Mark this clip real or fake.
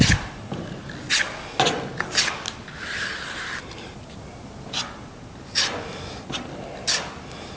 real